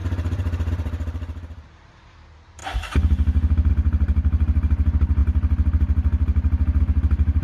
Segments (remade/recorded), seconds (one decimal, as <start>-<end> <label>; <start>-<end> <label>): 0.0-2.6 remade; 2.6-3.7 recorded; 3.7-5.2 remade; 5.2-6.8 recorded; 6.8-7.4 remade